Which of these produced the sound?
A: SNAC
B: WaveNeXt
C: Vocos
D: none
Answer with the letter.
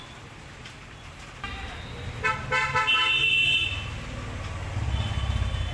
D